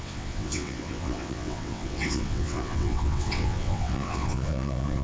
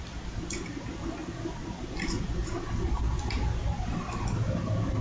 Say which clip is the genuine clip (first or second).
second